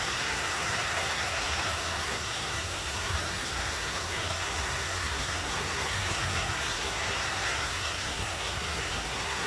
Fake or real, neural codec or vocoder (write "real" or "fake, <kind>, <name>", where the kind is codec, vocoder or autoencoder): fake, codec, SNAC